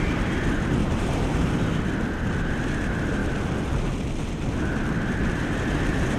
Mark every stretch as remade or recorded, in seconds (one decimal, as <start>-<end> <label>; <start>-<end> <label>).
0.0-0.8 recorded; 0.8-1.3 remade; 1.3-6.2 recorded